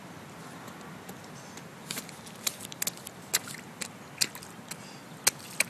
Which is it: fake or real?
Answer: real